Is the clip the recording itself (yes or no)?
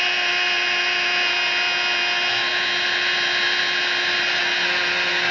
yes